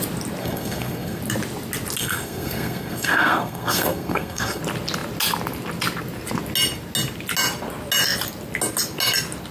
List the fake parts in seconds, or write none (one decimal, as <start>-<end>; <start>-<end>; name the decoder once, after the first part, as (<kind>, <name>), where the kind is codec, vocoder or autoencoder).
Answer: 0.4-1.2 (codec, SNAC); 2.0-4.6